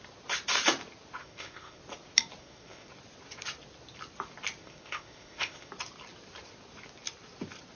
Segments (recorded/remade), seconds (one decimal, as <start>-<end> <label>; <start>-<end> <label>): 0.0-1.2 recorded; 1.2-1.8 remade; 1.8-2.4 recorded; 2.4-2.9 remade; 2.9-4.6 recorded; 4.6-5.7 remade; 5.7-7.8 recorded